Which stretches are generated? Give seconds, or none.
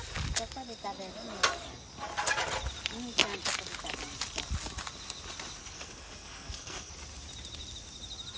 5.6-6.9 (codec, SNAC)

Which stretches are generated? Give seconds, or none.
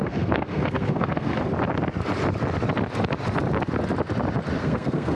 0.0-1.5 (codec, SNAC); 4.6-5.1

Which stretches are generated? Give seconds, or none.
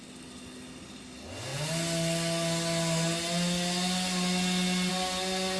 none